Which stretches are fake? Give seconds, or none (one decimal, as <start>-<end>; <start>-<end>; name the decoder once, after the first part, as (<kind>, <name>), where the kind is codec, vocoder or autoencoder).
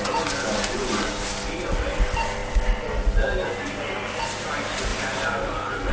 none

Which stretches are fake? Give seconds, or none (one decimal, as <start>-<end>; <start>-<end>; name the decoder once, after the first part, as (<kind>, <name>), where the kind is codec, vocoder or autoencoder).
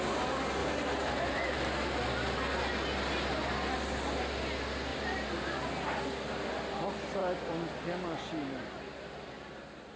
0.6-1.6 (vocoder, BigVGAN v2); 4.9-6.0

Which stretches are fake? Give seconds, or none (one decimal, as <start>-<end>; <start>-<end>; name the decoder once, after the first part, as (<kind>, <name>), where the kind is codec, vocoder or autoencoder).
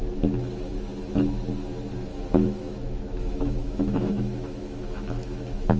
2.1-5.8 (autoencoder, DAC-VAE)